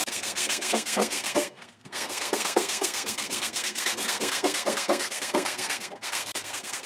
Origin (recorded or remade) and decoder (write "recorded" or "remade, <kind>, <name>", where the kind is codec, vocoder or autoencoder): remade, codec, SNAC